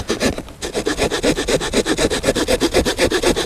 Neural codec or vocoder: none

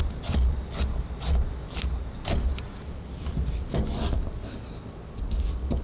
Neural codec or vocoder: none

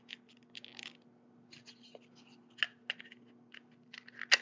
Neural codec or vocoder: none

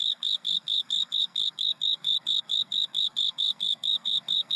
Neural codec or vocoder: codec, SNAC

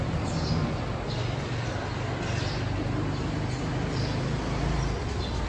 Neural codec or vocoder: none